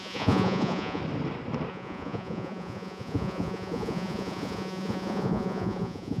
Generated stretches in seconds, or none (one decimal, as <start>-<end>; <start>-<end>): 0.0-1.0; 1.7-6.2

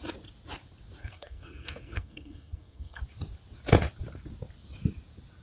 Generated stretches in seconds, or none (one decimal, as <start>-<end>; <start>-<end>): 1.0-3.0

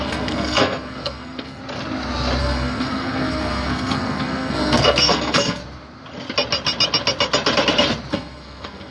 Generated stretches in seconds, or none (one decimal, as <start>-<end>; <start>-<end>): 0.0-1.6; 2.4-5.6; 8.1-8.9

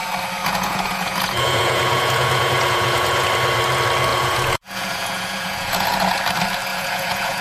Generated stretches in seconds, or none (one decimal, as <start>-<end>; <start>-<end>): 0.4-3.3; 4.1-6.2; 6.7-7.4